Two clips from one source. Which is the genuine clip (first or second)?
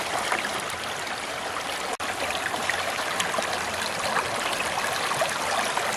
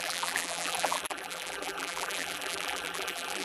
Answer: first